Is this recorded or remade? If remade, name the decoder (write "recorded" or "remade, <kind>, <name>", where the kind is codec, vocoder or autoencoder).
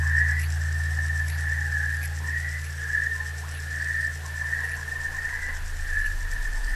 recorded